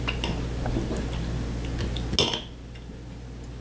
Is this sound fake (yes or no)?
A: no